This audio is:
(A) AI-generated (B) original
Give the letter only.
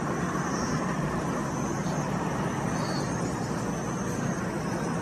B